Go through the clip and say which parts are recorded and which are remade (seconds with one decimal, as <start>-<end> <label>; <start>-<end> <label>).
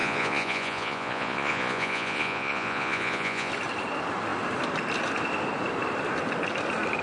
0.0-3.5 remade; 3.5-7.0 recorded